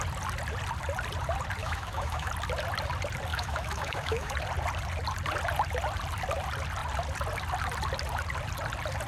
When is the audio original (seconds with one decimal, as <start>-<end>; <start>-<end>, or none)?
0.0-1.6; 2.3-3.3; 4.3-9.1